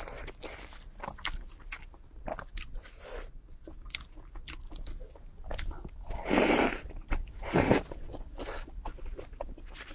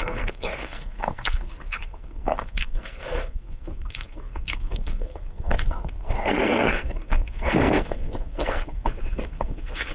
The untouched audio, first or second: first